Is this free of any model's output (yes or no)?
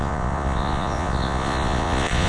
no